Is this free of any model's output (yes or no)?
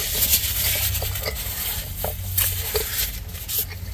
yes